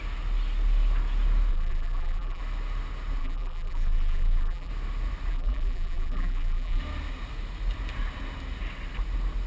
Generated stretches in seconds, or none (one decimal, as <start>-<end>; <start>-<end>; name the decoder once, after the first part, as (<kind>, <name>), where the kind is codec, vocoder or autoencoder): 1.5-2.4 (vocoder, BigVGAN v2); 3.2-4.7; 5.3-6.8